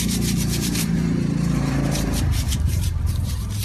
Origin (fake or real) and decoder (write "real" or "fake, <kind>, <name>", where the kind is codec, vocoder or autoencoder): fake, vocoder, BigVGAN v2